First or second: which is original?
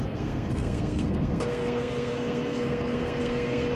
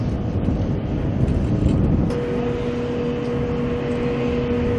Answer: second